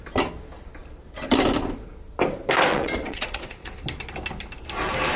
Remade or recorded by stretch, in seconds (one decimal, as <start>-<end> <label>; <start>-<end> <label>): 0.0-2.7 recorded; 2.7-3.7 remade; 3.7-5.2 recorded